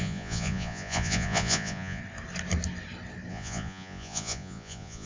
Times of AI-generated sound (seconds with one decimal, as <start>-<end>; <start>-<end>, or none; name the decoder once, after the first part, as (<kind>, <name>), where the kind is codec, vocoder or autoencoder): 0.0-2.0 (vocoder, Vocos); 3.3-5.1